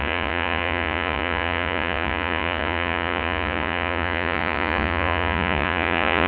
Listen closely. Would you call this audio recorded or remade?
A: remade